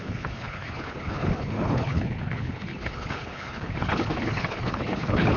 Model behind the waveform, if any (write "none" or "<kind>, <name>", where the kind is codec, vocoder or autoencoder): codec, HILCodec